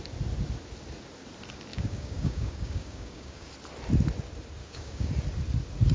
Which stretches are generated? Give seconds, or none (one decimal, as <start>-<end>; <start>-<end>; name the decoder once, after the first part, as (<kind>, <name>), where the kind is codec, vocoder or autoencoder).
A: 1.7-3.5 (codec, DAC); 4.6-5.1